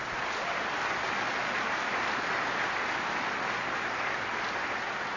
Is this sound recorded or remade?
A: recorded